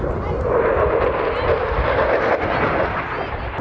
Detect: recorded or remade recorded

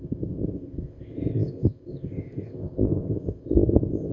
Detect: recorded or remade remade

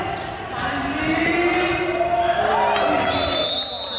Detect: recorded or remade recorded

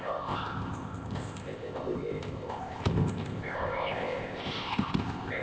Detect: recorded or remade remade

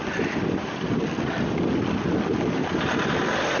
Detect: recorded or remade recorded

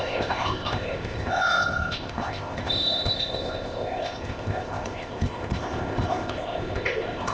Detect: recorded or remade remade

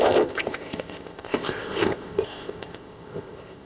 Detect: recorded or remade remade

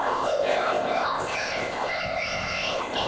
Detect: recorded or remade remade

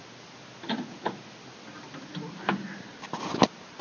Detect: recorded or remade recorded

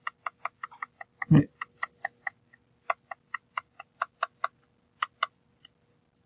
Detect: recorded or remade recorded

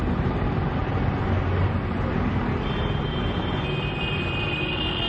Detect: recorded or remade recorded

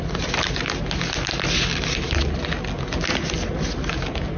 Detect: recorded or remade recorded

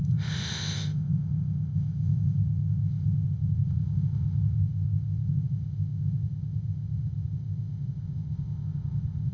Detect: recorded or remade remade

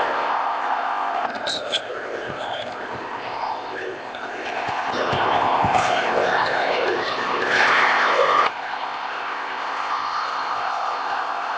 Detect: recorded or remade remade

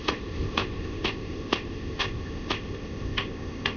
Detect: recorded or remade remade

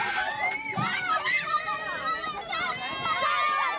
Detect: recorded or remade recorded